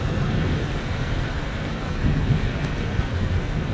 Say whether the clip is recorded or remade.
remade